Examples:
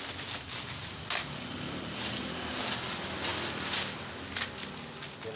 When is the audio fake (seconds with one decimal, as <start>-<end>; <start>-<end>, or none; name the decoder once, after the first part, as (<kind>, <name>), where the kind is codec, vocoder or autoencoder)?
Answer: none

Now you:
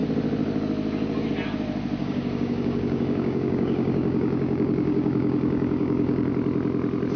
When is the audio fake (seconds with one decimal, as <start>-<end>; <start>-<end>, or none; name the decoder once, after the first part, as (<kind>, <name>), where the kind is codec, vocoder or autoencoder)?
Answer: 2.0-6.3 (codec, DAC)

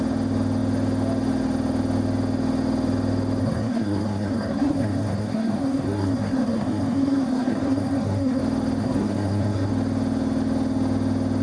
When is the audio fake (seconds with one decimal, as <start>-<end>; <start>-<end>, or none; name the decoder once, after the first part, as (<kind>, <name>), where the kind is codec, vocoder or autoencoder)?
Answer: 3.4-8.4 (codec, SNAC); 8.8-9.7